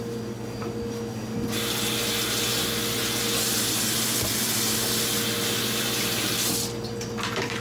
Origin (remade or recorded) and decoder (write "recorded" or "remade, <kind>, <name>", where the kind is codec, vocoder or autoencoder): recorded